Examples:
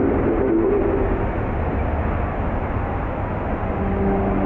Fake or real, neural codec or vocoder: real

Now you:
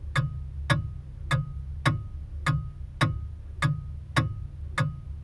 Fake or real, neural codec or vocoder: real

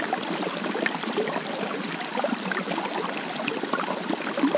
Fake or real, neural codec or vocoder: real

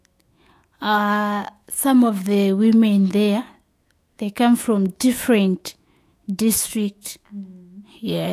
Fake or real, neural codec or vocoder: fake, autoencoder, DAC-VAE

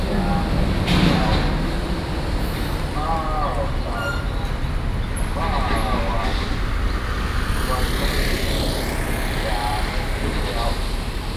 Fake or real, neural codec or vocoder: real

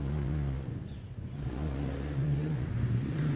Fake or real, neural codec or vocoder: fake, vocoder, Vocos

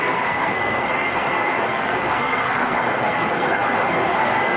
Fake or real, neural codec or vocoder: fake, codec, SNAC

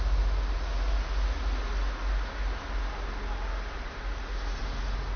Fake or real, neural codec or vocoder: real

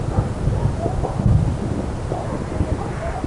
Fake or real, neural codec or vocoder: real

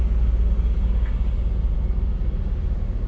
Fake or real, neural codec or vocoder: real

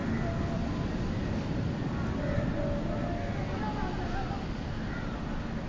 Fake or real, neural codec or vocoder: real